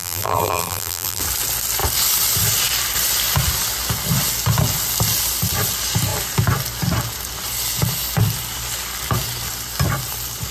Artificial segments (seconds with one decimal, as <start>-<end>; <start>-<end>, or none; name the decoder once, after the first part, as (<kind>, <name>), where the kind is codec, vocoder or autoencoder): 0.0-1.2 (vocoder, BigVGAN v2)